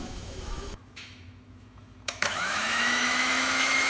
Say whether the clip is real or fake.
fake